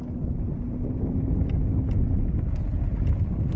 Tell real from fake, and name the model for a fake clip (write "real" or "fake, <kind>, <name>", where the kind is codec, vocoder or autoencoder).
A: real